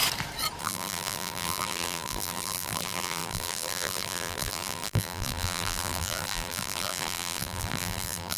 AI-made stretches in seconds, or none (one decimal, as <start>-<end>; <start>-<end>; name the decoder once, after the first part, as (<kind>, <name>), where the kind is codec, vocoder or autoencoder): 0.6-8.4 (vocoder, BigVGAN v2)